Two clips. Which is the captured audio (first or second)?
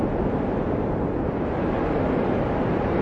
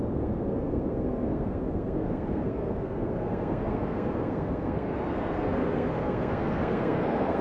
first